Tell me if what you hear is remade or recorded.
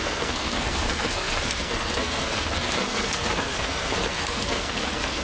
remade